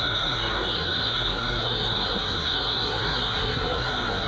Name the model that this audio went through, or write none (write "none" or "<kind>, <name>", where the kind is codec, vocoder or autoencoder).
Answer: codec, SNAC